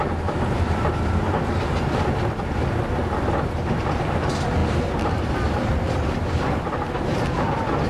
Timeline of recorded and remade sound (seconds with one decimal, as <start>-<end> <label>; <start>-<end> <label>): 0.0-7.9 recorded